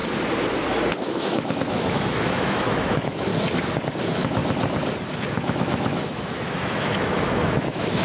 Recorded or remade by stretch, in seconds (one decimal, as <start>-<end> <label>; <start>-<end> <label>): 0.0-1.1 recorded; 1.1-3.3 remade; 3.3-4.0 recorded; 4.0-4.4 remade; 4.4-5.2 recorded; 5.2-8.0 remade